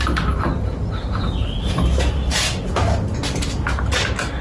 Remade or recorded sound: recorded